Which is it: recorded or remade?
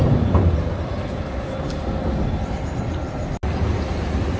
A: recorded